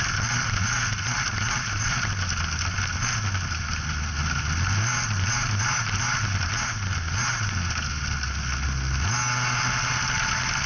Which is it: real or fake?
real